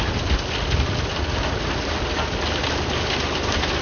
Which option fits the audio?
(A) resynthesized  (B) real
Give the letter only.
B